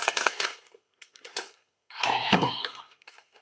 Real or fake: fake